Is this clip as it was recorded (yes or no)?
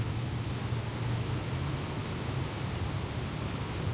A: yes